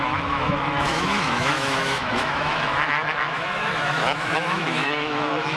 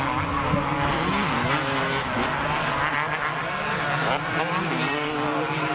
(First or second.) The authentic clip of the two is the second